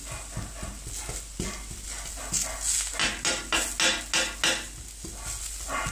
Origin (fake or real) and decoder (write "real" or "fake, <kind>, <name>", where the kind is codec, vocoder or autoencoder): real